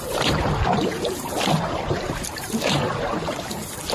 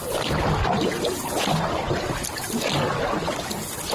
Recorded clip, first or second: second